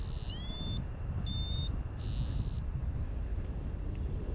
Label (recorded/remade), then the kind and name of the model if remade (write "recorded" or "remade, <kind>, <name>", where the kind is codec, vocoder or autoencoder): recorded